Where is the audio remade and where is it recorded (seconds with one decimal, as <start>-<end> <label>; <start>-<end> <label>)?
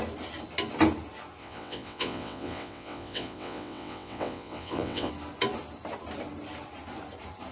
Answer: 0.0-1.4 recorded; 1.4-5.1 remade; 5.1-7.5 recorded